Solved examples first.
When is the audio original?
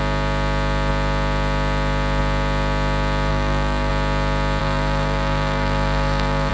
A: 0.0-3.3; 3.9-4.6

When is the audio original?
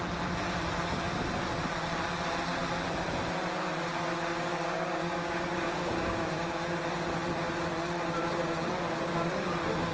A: 0.0-4.5; 6.5-9.9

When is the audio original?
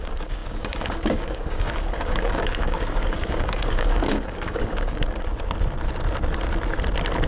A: 5.0-7.3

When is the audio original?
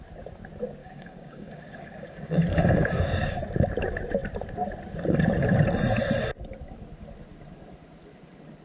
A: 0.0-0.8; 3.4-8.6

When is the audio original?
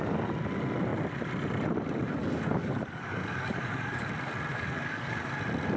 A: 0.0-2.2; 4.1-4.5; 5.3-5.8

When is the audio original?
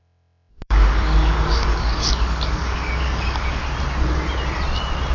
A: 0.0-0.5; 3.6-5.1